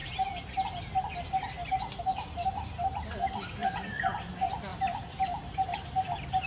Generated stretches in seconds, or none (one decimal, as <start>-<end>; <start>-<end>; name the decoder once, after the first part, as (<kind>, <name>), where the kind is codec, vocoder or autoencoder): 3.6-4.3 (vocoder, BigVGAN v2); 4.7-6.5